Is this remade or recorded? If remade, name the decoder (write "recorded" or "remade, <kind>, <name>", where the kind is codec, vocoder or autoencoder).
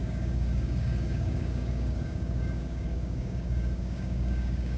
remade, codec, DAC